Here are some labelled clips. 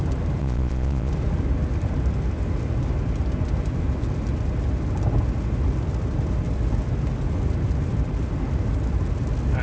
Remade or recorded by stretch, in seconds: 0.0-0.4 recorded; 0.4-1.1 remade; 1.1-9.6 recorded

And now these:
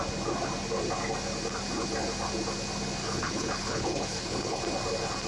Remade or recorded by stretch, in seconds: 0.0-3.0 recorded; 3.0-4.6 remade; 4.6-5.3 recorded